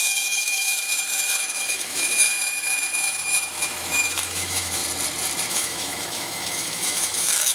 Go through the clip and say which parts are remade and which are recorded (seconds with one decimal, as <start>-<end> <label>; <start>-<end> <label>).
0.0-4.8 remade; 4.8-5.5 recorded; 5.5-7.5 remade